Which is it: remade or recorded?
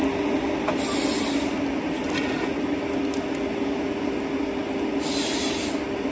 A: recorded